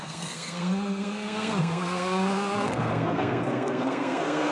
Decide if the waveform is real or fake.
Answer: fake